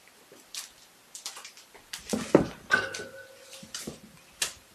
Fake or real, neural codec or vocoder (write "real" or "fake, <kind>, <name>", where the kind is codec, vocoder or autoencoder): fake, vocoder, BigVGAN v2